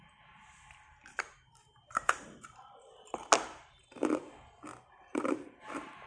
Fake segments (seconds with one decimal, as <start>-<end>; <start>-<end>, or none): 0.9-3.9; 4.7-6.1